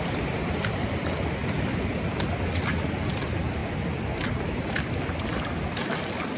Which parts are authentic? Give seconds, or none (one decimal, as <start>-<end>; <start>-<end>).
0.0-6.4